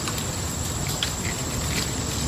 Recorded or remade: recorded